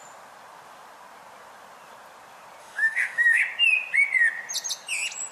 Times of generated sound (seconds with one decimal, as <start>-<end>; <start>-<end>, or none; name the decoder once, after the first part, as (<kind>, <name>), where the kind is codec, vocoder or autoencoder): 2.6-3.4 (autoencoder, DAC-VAE)